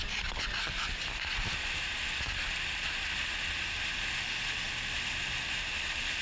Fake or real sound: real